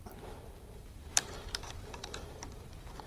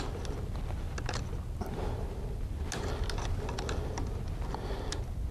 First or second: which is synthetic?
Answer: first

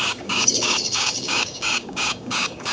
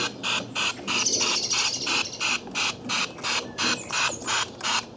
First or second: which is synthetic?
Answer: first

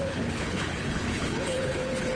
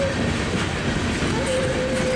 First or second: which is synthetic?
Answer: first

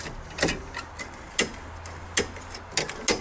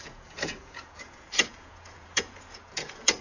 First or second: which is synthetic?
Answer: second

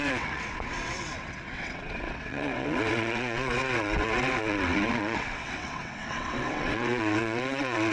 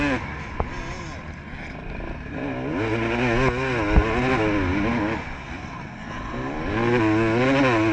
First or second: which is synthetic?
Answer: first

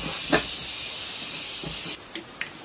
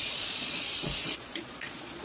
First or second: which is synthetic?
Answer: second